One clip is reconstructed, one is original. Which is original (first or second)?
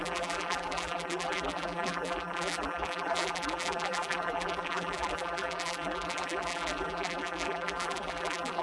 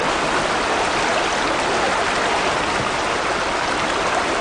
second